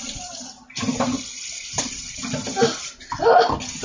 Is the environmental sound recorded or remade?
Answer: recorded